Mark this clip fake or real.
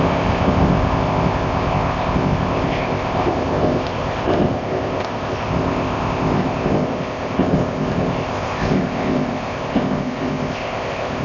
fake